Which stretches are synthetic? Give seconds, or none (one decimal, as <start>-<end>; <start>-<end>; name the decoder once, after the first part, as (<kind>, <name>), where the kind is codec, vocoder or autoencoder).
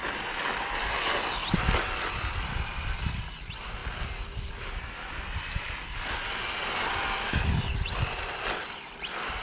none